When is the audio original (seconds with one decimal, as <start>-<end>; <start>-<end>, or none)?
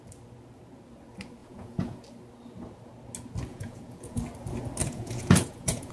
0.0-1.4; 2.0-3.5; 4.2-4.8